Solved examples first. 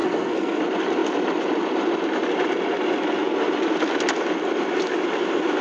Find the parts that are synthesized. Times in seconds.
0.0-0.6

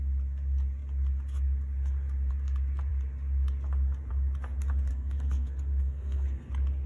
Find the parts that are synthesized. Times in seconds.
4.9-6.5

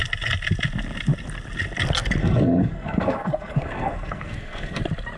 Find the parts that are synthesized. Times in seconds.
2.2-4.8

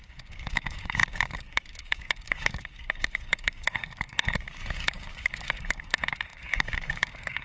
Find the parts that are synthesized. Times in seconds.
0.0-7.4